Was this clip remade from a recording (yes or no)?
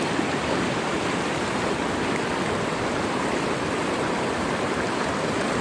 yes